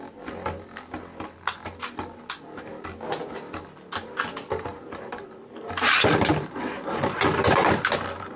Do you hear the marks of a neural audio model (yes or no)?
no